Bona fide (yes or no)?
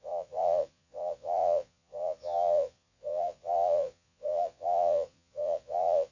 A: no